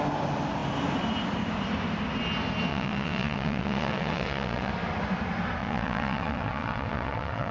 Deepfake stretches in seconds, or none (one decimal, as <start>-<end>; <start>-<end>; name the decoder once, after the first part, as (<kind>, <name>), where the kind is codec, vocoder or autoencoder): 2.7-4.7 (vocoder, WaveNeXt); 5.6-7.5